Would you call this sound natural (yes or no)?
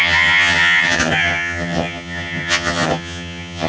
no